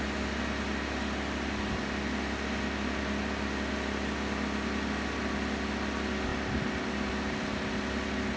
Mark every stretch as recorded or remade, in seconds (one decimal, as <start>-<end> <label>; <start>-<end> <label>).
0.0-8.4 recorded